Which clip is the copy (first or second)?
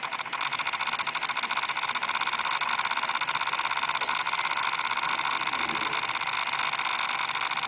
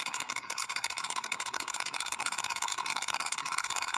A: second